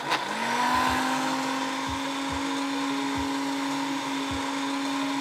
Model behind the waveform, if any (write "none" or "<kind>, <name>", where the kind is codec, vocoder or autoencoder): none